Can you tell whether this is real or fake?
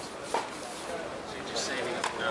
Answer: real